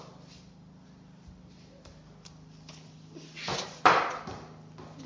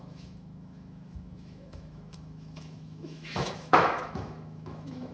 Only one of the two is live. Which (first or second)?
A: first